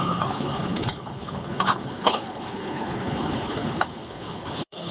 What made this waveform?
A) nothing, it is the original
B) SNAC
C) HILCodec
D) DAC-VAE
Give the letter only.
C